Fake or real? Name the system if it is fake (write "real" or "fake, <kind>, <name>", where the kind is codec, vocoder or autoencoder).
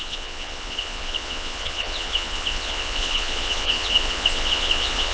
fake, vocoder, Vocos